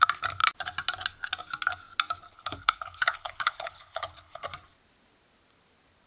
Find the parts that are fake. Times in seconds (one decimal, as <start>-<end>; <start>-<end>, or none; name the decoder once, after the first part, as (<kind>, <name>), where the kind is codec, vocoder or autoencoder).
2.3-4.4 (codec, HILCodec)